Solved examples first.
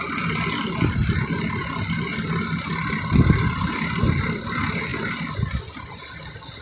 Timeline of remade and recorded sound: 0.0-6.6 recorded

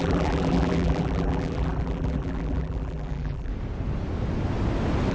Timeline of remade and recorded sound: 0.0-3.5 remade; 3.5-5.1 recorded

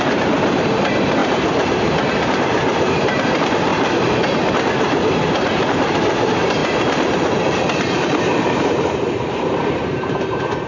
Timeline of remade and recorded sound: 0.0-10.7 remade

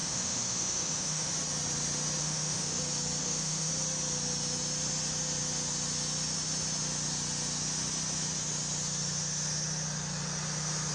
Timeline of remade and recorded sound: 0.0-1.3 remade; 1.3-2.2 recorded; 2.2-2.8 remade; 2.8-3.2 recorded; 3.2-3.7 remade; 3.7-10.9 recorded

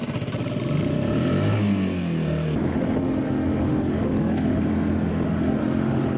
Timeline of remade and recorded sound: 0.0-2.7 recorded; 2.7-4.6 remade; 4.6-5.1 recorded; 5.1-6.2 remade

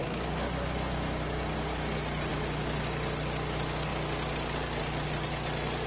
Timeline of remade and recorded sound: 0.0-5.9 recorded